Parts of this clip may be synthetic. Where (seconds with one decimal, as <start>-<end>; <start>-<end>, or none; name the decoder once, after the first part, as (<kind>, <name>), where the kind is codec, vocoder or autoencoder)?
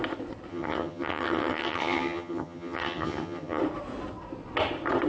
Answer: 0.5-3.6 (vocoder, HiFi-GAN)